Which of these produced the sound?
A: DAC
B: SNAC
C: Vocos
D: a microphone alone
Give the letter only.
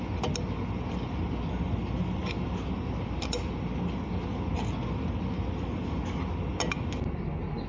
D